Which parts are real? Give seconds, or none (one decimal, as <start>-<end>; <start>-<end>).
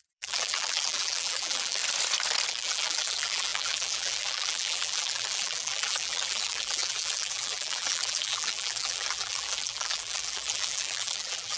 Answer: 1.8-2.5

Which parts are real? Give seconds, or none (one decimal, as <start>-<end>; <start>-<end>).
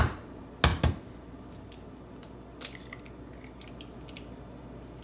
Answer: 0.0-5.0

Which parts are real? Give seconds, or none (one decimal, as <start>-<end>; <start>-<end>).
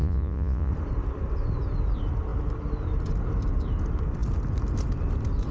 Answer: 0.7-5.5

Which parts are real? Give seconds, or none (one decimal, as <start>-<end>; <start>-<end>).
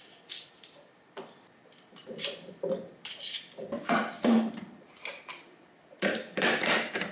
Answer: none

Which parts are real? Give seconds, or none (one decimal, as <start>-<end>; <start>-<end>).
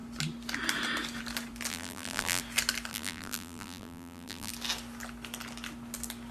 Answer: 0.0-1.7; 2.4-2.9; 4.5-6.3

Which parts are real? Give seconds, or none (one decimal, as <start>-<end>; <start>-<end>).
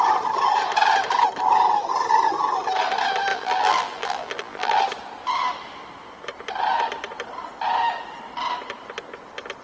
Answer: 0.0-3.3; 4.8-9.6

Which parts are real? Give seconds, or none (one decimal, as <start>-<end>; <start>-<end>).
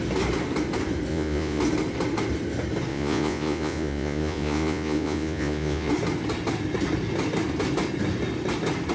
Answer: 0.0-1.1; 1.6-2.9; 5.9-8.9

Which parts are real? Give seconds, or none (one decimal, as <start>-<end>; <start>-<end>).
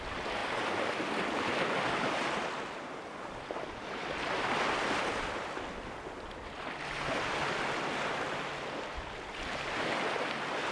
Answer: 0.0-10.7